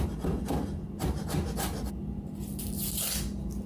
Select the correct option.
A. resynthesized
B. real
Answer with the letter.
B